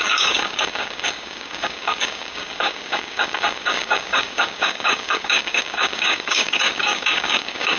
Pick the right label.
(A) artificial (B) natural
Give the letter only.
A